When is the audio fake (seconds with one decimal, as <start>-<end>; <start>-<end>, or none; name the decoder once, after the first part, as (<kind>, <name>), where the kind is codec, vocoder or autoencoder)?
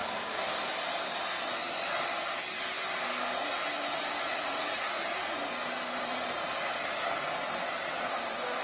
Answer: 4.2-5.0 (vocoder, Vocos)